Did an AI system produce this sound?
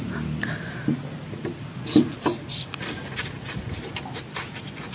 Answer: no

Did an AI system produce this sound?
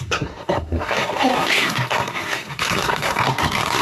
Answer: yes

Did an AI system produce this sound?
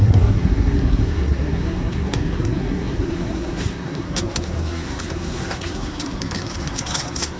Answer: yes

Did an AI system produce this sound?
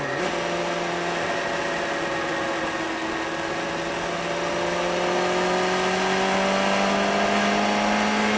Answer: no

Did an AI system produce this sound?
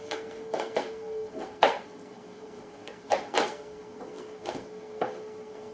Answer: yes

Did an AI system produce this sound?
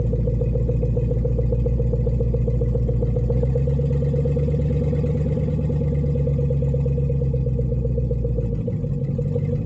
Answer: no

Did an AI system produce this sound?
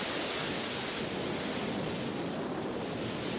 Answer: no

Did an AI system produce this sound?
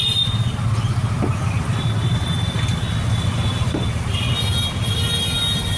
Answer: no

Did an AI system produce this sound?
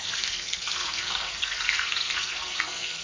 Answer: yes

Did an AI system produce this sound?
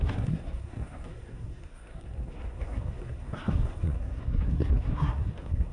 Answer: yes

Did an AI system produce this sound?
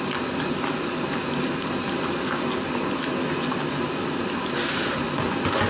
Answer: no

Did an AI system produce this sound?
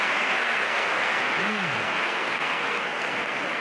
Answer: yes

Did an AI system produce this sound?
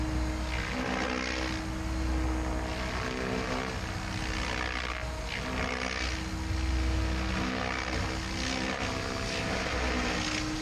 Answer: no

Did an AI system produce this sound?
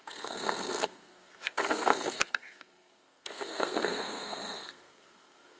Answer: yes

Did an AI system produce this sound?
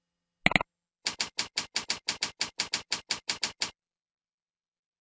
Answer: no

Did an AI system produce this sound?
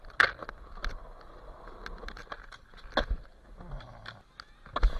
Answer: no